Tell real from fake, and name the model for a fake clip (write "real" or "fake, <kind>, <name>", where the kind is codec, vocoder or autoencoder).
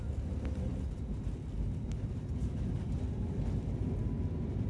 real